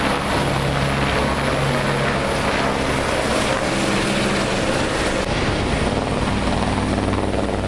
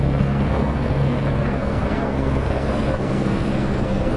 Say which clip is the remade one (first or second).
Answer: second